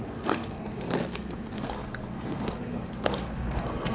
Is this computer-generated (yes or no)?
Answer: yes